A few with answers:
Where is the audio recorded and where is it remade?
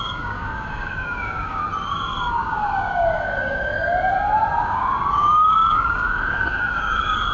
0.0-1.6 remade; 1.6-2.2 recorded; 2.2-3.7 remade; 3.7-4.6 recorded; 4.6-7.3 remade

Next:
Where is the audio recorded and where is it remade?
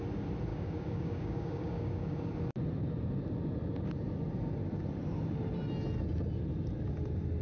0.0-0.5 recorded; 0.5-2.3 remade; 2.3-7.4 recorded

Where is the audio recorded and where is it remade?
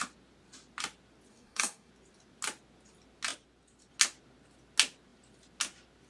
0.0-1.3 recorded; 1.3-1.9 remade; 1.9-6.1 recorded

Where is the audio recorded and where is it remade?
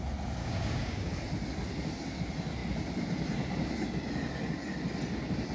0.0-0.4 recorded; 0.4-1.1 remade; 1.1-5.5 recorded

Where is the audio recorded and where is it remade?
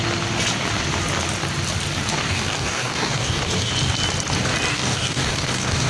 0.0-2.1 recorded; 2.1-3.7 remade; 3.7-4.7 recorded; 4.7-5.9 remade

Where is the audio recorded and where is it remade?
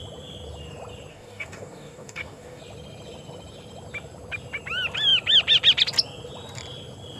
0.0-1.1 recorded; 1.1-2.6 remade; 2.6-7.2 recorded